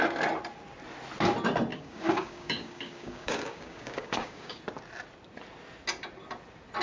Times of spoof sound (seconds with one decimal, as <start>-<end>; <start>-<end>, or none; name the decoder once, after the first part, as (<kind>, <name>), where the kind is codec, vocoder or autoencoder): 1.7-4.6 (codec, DAC)